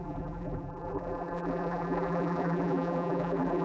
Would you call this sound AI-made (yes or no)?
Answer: yes